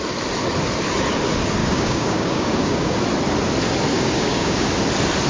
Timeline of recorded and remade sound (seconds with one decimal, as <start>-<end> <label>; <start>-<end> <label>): 0.0-1.6 recorded; 1.6-3.0 remade; 3.0-3.9 recorded; 3.9-4.7 remade; 4.7-5.3 recorded